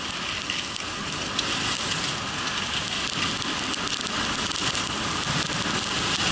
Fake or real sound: real